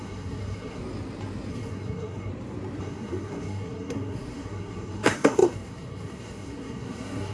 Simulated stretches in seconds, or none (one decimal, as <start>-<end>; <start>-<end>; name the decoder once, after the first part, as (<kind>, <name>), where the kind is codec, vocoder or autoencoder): 0.0-0.8 (codec, SNAC); 1.5-2.3; 2.8-7.3